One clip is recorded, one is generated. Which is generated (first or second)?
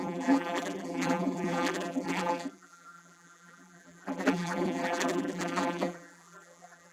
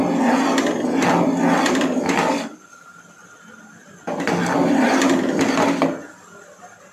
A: first